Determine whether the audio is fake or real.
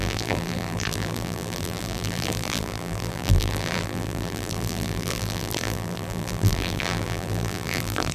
fake